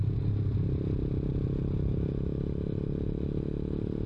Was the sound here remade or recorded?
recorded